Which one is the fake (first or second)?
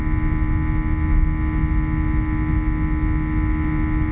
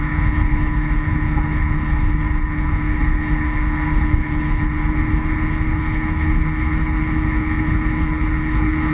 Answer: second